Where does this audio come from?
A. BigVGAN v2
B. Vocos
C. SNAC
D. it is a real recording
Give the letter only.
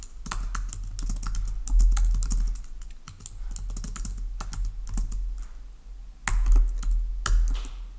D